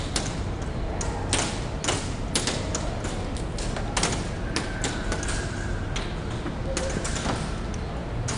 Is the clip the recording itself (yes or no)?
yes